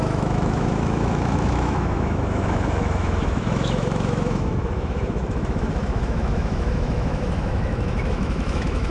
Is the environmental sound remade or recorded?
remade